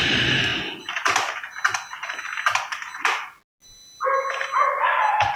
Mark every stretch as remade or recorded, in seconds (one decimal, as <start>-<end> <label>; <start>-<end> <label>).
0.0-5.4 recorded

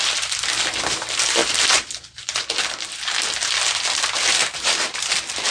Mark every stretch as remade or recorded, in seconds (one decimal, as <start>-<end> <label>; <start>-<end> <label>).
0.0-1.4 recorded; 1.4-2.4 remade; 2.4-5.5 recorded